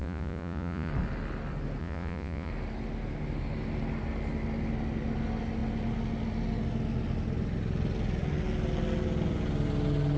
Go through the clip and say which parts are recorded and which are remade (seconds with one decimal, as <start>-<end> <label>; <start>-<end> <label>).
0.0-0.9 remade; 0.9-1.8 recorded; 1.8-2.5 remade; 2.5-10.2 recorded